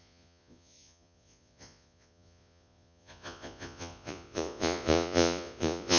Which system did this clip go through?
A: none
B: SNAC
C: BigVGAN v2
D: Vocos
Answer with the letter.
D